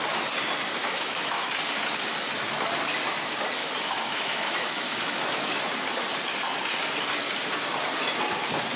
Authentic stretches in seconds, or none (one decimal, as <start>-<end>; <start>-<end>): 0.0-0.8; 1.5-3.6; 5.6-8.8

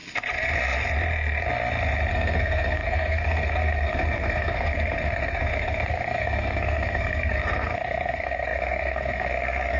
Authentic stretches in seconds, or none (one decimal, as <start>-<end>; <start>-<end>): 0.0-2.1